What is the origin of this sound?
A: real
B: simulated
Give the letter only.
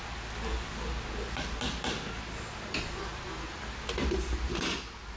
A